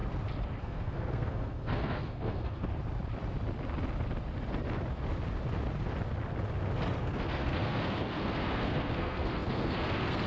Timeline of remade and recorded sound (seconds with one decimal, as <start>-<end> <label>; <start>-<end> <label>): 0.0-0.6 recorded; 0.6-2.7 remade; 2.7-7.0 recorded; 7.0-10.3 remade